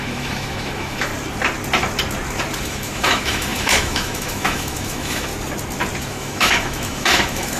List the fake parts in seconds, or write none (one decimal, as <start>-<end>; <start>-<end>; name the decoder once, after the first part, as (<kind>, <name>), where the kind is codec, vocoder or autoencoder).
0.0-1.1 (autoencoder, DAC-VAE); 2.6-5.3; 6.0-7.6